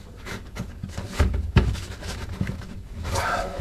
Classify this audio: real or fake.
fake